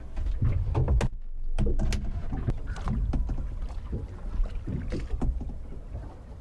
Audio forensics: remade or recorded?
recorded